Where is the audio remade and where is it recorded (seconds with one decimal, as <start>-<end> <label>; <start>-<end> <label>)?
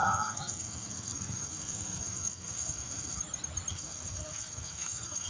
0.0-3.2 remade; 3.2-3.7 recorded; 3.7-5.3 remade